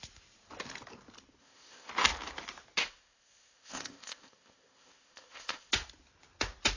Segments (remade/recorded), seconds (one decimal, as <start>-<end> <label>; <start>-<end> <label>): 0.0-1.4 recorded; 1.4-1.9 remade; 1.9-2.8 recorded; 2.8-5.7 remade; 5.7-6.8 recorded